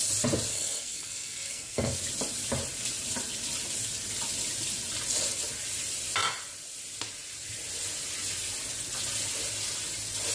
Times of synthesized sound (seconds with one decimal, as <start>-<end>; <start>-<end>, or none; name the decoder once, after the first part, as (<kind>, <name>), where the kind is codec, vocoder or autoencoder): 0.5-2.0 (codec, SNAC)